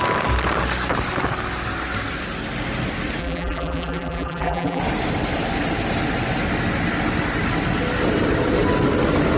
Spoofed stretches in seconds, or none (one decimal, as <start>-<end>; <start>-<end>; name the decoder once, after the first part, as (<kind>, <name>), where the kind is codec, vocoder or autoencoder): 3.2-4.8 (vocoder, BigVGAN v2)